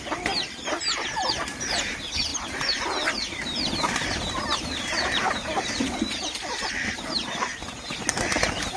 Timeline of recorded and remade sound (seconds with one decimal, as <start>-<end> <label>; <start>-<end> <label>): 0.0-2.3 recorded; 2.3-6.7 remade; 6.7-8.8 recorded